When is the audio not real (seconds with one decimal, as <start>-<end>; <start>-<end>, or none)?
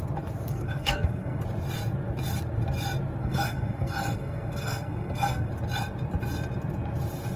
0.5-1.4; 3.2-5.5